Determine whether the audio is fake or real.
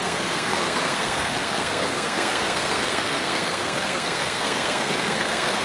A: fake